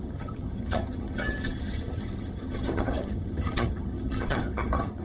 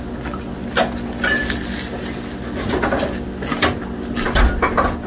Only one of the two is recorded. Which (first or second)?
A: second